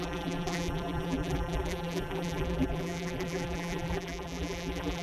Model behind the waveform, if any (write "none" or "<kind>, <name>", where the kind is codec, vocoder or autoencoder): vocoder, BigVGAN v2